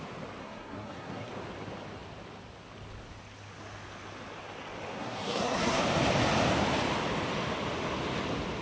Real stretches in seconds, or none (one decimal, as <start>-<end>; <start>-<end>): 0.0-0.4; 1.3-4.9; 5.8-8.6